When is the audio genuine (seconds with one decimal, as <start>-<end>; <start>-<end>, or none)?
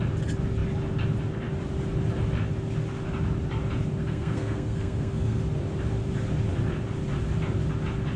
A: 0.0-4.0; 5.4-8.2